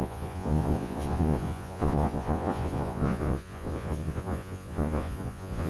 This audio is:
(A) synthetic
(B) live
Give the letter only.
A